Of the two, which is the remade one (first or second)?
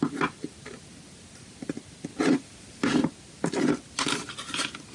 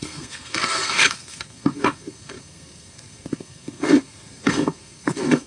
second